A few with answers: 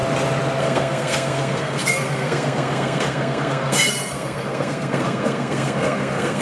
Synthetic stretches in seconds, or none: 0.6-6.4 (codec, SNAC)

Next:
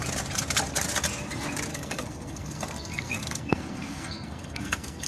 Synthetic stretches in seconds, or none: 1.7-5.1 (codec, SNAC)

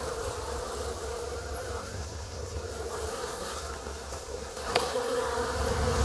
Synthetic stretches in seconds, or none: 1.8-2.6 (codec, SNAC); 3.1-5.2

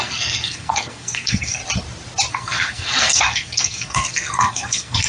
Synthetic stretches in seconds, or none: 0.0-1.6 (codec, SNAC); 2.3-5.1

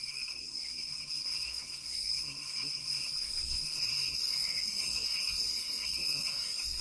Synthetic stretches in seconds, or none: 0.0-6.8 (codec, SNAC)

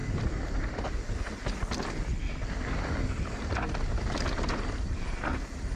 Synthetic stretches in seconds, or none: none

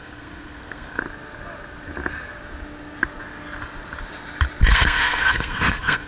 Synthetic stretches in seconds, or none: 0.0-1.0 (codec, SNAC); 4.7-6.1

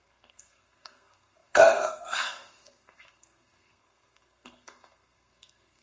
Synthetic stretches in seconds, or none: 0.0-5.8 (codec, SNAC)